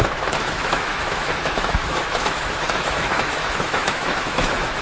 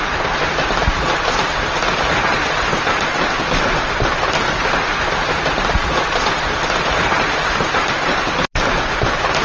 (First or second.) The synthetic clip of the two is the first